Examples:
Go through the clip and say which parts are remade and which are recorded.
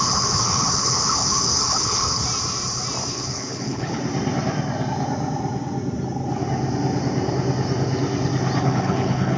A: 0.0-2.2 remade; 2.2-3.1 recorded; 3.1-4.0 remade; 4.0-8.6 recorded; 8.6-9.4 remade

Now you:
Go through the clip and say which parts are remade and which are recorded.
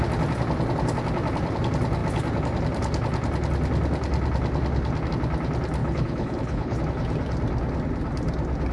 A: 0.0-5.8 recorded; 5.8-6.8 remade; 6.8-8.7 recorded